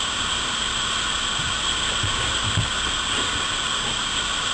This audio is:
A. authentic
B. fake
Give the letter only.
A